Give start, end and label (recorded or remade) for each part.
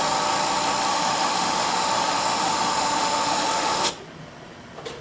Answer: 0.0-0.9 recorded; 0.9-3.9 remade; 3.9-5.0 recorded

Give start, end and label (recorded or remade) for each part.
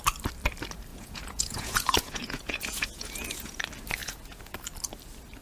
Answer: 0.0-0.9 recorded; 0.9-3.6 remade; 3.6-4.0 recorded; 4.0-4.6 remade; 4.6-5.4 recorded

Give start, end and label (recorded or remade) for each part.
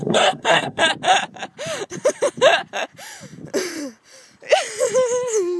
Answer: 0.0-0.8 remade; 0.8-5.6 recorded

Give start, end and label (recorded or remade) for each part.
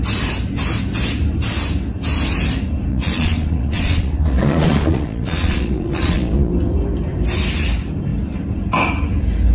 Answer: 0.0-2.9 recorded; 2.9-6.5 remade; 6.5-9.5 recorded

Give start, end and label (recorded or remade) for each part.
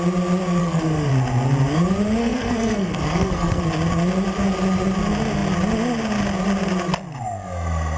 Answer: 0.0-0.6 recorded; 0.6-1.1 remade; 1.1-2.2 recorded; 2.2-3.6 remade; 3.6-8.0 recorded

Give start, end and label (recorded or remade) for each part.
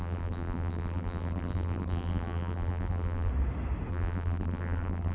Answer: 0.0-3.3 remade; 3.3-3.9 recorded; 3.9-5.1 remade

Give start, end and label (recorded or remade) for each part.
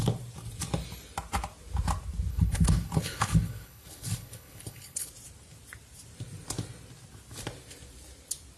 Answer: 0.0-2.3 recorded; 2.3-5.1 remade; 5.1-8.6 recorded